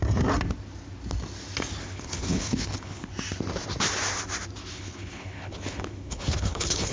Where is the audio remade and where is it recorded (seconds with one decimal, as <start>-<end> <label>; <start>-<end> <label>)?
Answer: 0.0-1.8 recorded; 1.8-3.1 remade; 3.1-4.7 recorded; 4.7-6.9 remade